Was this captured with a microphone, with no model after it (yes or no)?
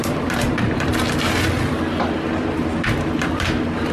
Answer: yes